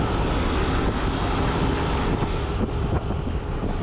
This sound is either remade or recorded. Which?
recorded